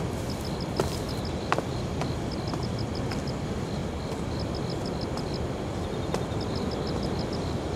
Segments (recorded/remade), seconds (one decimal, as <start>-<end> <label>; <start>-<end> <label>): 0.0-7.8 recorded